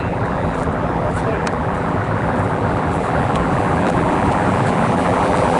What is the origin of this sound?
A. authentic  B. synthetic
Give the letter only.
B